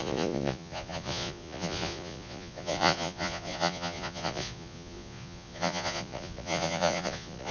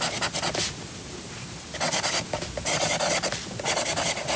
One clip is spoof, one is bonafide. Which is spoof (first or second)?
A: first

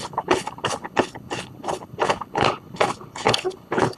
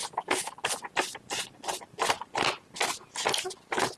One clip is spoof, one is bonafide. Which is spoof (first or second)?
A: first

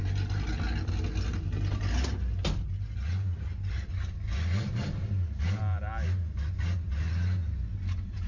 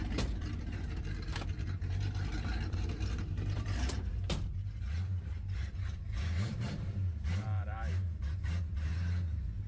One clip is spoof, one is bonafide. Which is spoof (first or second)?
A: second